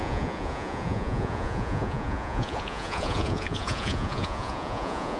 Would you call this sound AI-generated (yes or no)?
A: yes